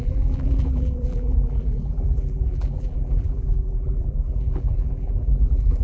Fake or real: fake